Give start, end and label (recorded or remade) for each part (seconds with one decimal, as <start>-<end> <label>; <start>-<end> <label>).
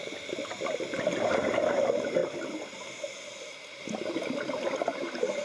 0.0-5.4 recorded